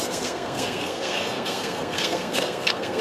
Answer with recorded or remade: remade